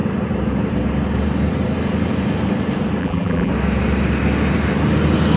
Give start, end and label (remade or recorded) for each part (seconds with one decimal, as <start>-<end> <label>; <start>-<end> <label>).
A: 0.0-3.0 recorded; 3.0-3.5 remade; 3.5-5.4 recorded